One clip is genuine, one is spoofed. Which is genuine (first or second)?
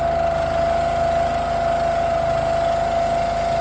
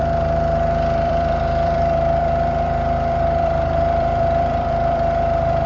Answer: first